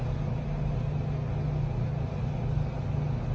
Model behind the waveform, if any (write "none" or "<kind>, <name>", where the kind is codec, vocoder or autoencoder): none